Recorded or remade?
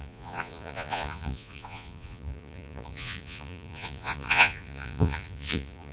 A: remade